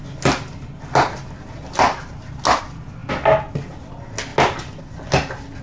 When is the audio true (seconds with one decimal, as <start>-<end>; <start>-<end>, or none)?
0.0-5.6